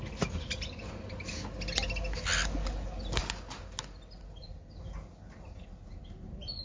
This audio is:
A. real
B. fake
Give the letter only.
A